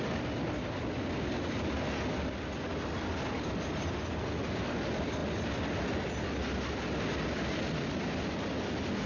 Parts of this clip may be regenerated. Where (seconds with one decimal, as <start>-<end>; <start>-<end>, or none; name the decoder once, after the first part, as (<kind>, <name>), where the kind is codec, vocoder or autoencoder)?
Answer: none